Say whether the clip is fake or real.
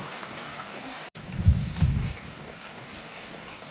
fake